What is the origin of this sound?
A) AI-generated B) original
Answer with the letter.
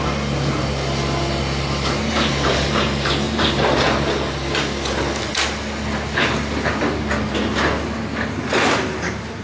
B